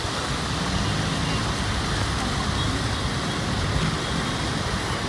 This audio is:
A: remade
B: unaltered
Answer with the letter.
B